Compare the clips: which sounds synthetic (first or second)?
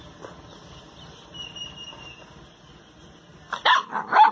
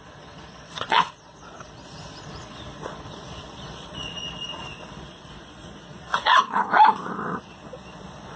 second